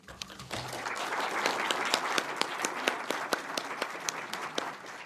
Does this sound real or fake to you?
real